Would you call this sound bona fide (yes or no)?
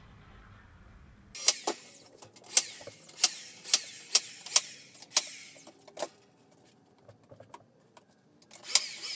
yes